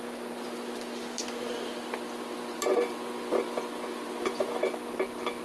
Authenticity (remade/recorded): recorded